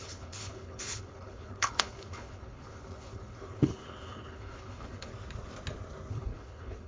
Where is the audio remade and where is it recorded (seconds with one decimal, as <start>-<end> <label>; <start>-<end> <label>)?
0.0-5.1 remade; 5.1-6.1 recorded; 6.1-6.9 remade